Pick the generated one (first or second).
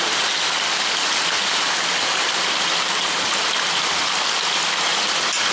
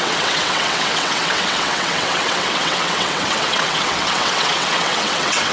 second